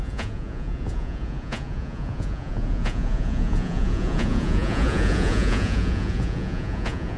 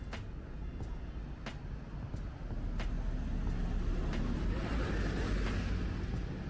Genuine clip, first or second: second